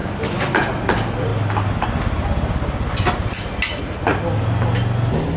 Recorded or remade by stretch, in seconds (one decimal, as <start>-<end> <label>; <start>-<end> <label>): 0.0-5.4 recorded